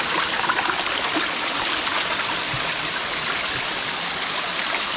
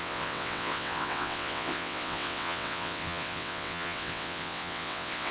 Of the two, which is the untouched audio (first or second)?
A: first